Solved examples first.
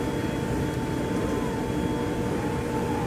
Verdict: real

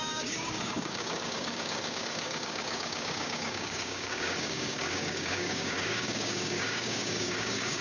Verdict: fake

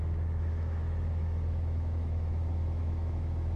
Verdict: fake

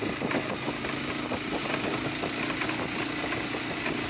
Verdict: real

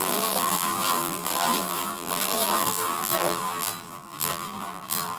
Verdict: fake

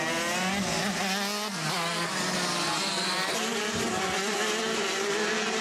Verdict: real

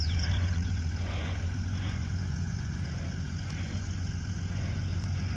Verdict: fake